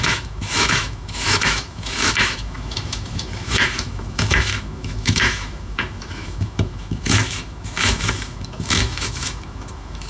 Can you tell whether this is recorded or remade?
remade